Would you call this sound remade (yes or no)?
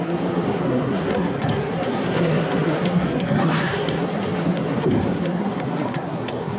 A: yes